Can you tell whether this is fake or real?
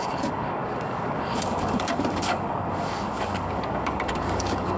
fake